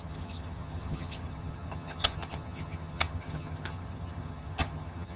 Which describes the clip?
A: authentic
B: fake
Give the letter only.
B